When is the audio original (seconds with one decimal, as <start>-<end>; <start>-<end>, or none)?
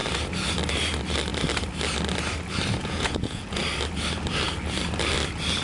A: 0.0-2.8; 3.6-5.6